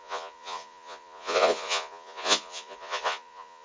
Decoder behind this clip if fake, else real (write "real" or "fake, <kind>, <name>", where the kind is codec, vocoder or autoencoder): fake, vocoder, Vocos